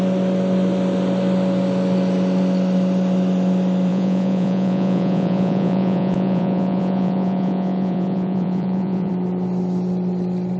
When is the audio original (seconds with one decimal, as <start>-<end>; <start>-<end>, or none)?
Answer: 0.0-3.9; 9.1-10.6